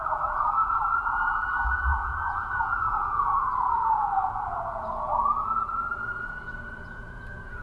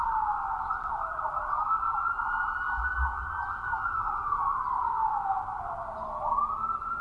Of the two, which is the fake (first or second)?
first